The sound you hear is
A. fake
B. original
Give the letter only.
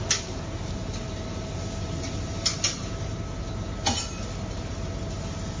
B